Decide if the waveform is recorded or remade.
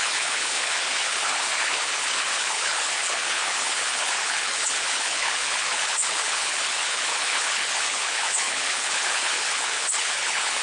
remade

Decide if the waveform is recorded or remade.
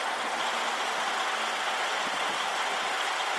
recorded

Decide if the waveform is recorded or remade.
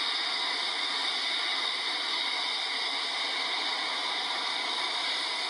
recorded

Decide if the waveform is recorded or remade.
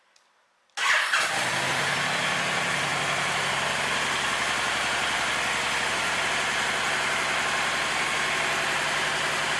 recorded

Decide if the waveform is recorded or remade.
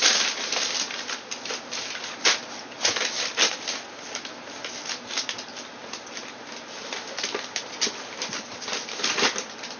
recorded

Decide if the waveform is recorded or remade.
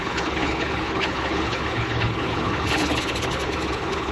remade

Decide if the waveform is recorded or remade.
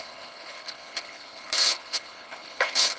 remade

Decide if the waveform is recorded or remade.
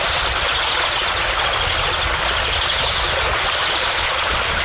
recorded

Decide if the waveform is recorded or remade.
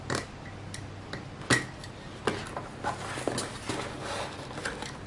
recorded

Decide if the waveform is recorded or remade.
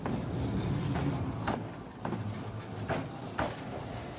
recorded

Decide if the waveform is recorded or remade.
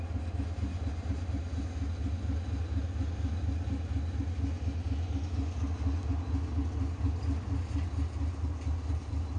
recorded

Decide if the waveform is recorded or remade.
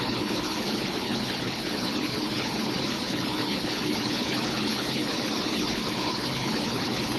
remade